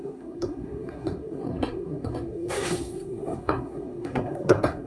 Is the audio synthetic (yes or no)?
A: yes